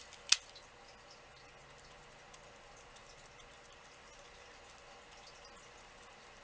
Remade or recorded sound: recorded